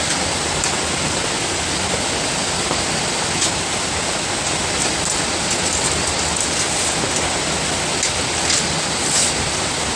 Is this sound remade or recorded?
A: recorded